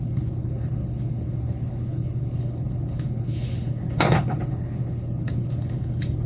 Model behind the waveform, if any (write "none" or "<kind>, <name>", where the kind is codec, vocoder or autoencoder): codec, HILCodec